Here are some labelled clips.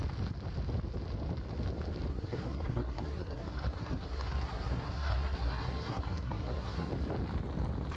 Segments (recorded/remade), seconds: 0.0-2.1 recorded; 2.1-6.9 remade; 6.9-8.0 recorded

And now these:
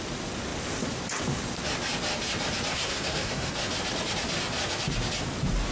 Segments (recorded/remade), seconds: 0.0-2.7 recorded; 2.7-3.5 remade; 3.5-5.7 recorded

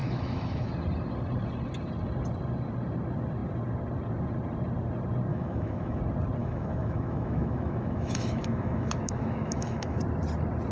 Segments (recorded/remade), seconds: 0.0-0.7 remade; 0.7-5.3 recorded; 5.3-6.0 remade; 6.0-6.4 recorded; 6.4-10.0 remade; 10.0-10.7 recorded

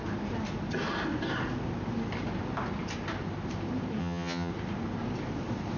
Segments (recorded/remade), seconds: 0.0-4.0 recorded; 4.0-4.5 remade; 4.5-5.8 recorded

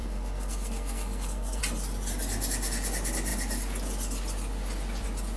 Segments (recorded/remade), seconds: 0.0-1.6 remade; 1.6-5.4 recorded